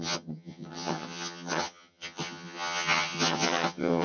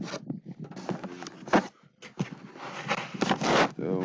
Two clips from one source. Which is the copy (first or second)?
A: first